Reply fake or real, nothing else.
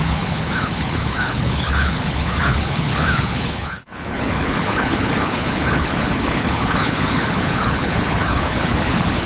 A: fake